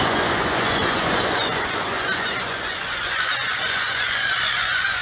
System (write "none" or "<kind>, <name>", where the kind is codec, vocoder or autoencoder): vocoder, Vocos